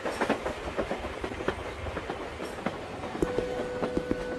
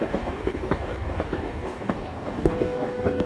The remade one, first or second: second